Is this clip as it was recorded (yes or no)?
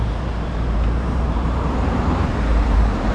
no